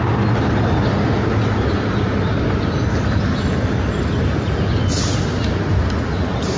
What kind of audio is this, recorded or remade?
recorded